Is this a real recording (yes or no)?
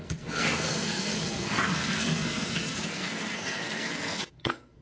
no